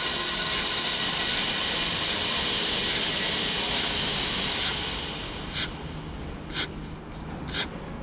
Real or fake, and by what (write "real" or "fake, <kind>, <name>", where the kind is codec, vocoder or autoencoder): real